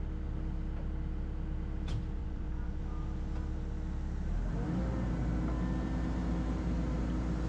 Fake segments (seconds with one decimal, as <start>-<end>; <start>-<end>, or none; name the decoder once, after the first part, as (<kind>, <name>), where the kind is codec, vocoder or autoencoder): 2.2-2.8 (vocoder, Vocos)